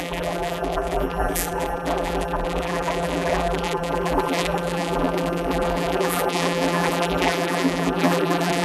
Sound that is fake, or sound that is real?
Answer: fake